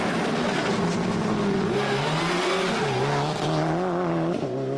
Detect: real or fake real